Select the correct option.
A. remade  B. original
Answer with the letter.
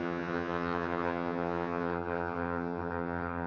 A